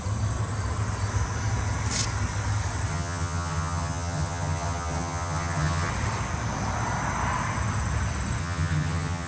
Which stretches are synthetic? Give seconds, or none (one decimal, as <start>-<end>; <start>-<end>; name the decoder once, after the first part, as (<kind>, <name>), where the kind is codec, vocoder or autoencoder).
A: 2.9-5.9 (vocoder, HiFi-GAN); 8.4-9.3